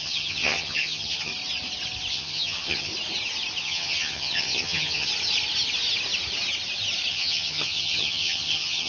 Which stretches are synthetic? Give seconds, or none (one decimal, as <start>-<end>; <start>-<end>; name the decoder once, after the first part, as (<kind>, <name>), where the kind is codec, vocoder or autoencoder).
0.0-1.3 (vocoder, HiFi-GAN); 2.1-2.9; 3.6-5.1; 7.1-8.9